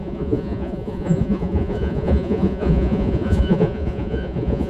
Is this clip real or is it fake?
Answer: fake